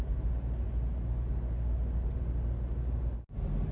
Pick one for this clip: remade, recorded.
recorded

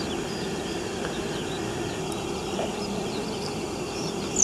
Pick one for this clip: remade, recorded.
recorded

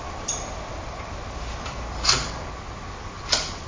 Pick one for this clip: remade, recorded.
recorded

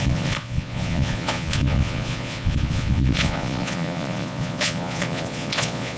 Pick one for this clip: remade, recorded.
remade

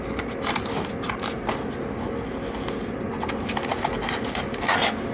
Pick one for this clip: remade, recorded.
recorded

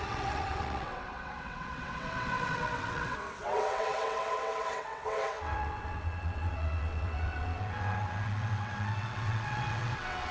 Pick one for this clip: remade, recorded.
remade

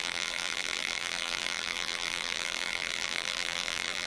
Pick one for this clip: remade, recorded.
remade